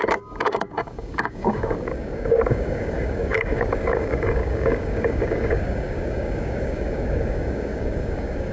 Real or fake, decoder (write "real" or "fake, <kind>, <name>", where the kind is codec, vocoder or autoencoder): fake, codec, DAC